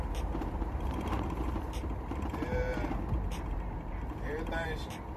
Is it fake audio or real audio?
fake